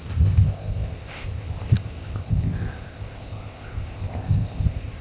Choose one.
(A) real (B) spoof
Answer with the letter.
B